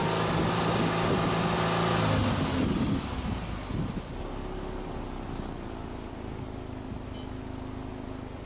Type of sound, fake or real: real